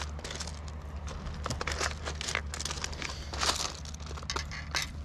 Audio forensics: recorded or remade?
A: recorded